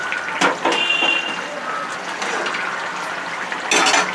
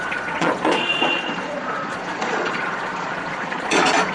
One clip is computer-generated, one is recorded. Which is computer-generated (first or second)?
second